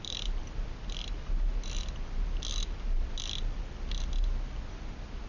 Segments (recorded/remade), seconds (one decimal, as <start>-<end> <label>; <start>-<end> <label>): 0.0-5.3 recorded